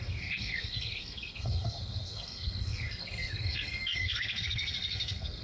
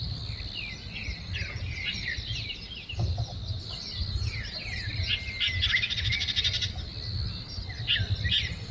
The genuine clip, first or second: second